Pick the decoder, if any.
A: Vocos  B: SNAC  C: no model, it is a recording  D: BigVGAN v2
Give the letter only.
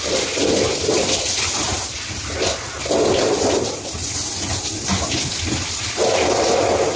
C